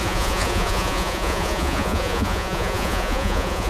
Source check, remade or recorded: remade